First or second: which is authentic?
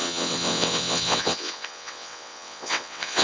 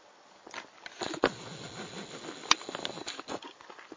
second